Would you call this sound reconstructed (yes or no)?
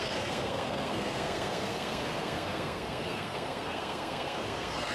yes